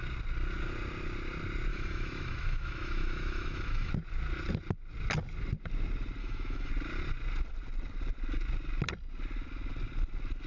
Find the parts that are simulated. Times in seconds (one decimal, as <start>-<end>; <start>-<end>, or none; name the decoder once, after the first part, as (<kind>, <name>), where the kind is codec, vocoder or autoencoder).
1.7-3.9 (autoencoder, DAC-VAE); 6.2-6.7